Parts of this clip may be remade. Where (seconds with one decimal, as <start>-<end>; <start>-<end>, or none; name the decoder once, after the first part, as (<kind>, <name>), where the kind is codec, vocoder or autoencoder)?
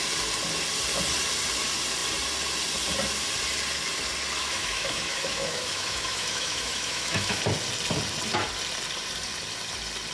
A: 4.4-7.4 (autoencoder, DAC-VAE)